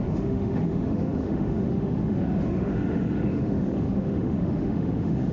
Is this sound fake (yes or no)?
yes